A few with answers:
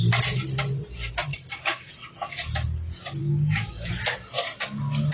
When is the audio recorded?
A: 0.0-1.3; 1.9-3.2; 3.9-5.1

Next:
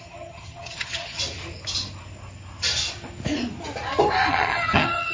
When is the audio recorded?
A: 1.2-4.3

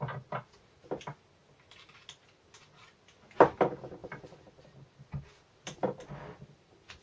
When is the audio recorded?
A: 0.0-7.0

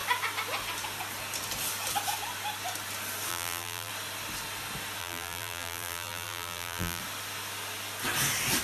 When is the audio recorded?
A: 0.0-3.3; 3.9-5.0; 7.0-8.6

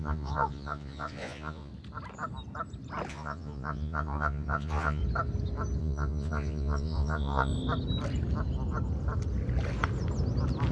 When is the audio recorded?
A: 1.7-3.1; 5.0-5.8; 7.5-10.7

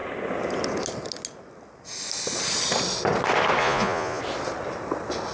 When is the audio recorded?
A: 0.0-3.6; 4.2-5.3

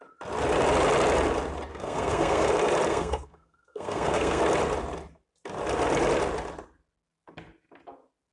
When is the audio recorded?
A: 0.0-1.7; 2.5-2.9; 4.4-8.3